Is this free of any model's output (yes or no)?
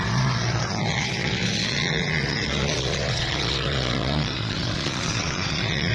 no